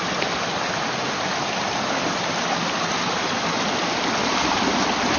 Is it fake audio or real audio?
real